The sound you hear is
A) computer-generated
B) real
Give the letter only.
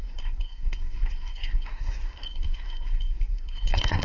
A